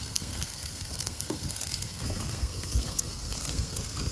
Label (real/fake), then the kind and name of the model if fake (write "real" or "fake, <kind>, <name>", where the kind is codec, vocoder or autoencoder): fake, codec, SNAC